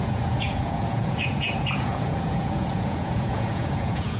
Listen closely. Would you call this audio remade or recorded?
remade